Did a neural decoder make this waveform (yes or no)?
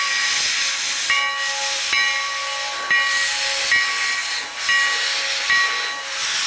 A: no